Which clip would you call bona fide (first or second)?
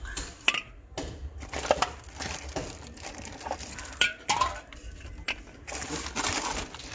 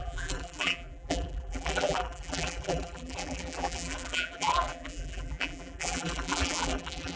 first